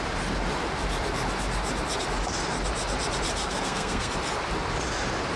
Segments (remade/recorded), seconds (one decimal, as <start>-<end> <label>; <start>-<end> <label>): 0.0-3.4 recorded; 3.4-4.1 remade; 4.1-5.4 recorded